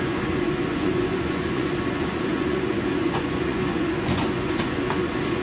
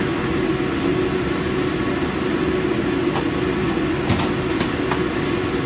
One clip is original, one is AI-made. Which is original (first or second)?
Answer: second